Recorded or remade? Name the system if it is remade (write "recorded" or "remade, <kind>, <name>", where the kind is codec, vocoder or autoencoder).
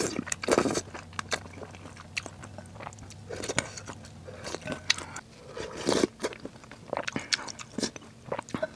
recorded